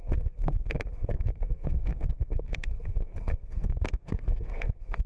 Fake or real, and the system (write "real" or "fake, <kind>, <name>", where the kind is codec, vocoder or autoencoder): fake, codec, SNAC